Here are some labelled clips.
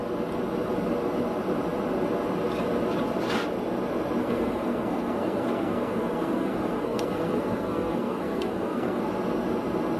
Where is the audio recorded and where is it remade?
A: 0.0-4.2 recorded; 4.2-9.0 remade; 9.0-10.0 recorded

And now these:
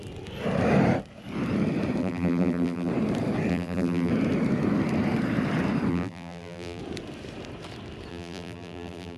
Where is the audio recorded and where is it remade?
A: 0.0-2.0 recorded; 2.0-2.9 remade; 2.9-3.5 recorded; 3.5-4.1 remade; 4.1-5.9 recorded; 5.9-6.8 remade; 6.8-8.1 recorded; 8.1-9.2 remade

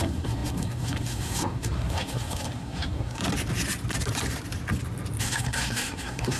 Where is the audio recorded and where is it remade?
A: 0.0-3.2 remade; 3.2-5.2 recorded; 5.2-6.4 remade

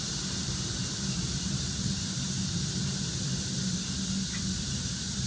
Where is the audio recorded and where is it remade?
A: 0.0-3.3 remade; 3.3-4.6 recorded; 4.6-5.3 remade